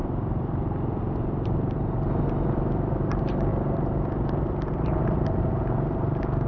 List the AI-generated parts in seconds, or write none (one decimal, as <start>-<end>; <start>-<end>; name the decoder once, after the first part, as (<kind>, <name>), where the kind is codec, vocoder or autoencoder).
none